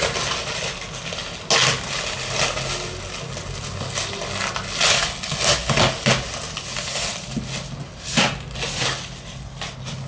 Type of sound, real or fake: real